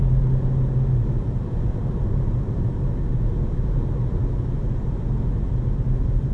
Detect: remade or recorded recorded